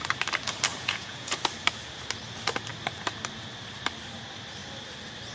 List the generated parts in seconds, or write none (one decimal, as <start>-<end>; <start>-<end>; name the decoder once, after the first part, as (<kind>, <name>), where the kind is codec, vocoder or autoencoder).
0.7-1.4 (vocoder, Vocos)